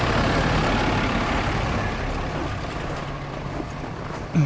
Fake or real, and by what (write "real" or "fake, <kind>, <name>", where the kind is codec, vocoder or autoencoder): real